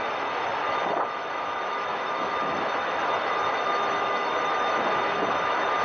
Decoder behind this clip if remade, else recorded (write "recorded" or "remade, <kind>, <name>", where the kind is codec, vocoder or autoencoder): remade, autoencoder, DAC-VAE